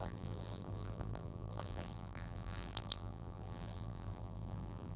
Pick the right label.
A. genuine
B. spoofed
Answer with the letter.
B